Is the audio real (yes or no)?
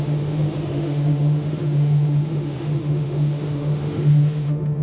no